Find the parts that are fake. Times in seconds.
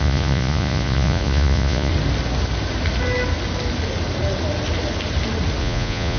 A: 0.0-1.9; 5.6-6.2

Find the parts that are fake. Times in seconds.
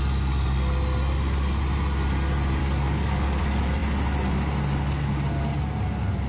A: 2.6-3.4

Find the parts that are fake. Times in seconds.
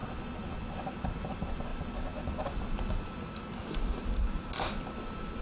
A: none